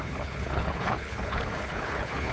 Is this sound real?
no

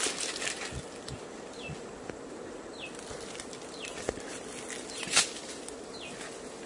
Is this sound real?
yes